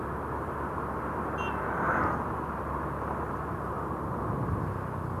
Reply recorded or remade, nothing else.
recorded